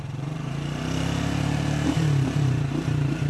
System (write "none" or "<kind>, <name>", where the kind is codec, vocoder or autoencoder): vocoder, BigVGAN v2